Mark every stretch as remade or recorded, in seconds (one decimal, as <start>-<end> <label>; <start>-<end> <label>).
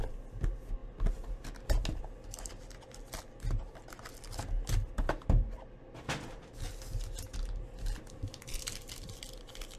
0.0-9.8 recorded